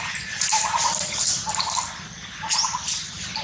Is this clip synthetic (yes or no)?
no